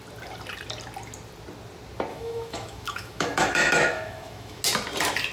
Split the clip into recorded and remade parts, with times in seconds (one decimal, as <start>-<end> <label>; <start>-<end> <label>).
0.0-2.1 recorded; 2.1-4.6 remade; 4.6-5.3 recorded